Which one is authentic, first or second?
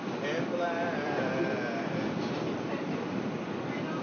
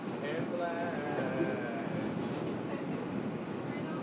second